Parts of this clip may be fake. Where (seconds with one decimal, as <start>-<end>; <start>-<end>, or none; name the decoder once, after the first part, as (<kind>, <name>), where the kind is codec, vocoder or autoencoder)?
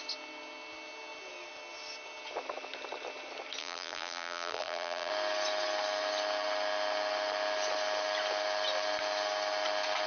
3.6-5.1 (vocoder, BigVGAN v2)